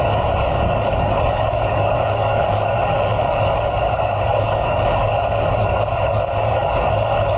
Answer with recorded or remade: remade